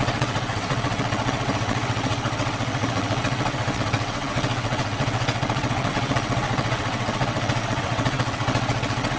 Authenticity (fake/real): fake